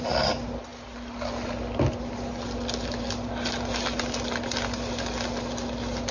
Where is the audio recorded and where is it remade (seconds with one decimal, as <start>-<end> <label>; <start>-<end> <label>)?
0.0-6.1 recorded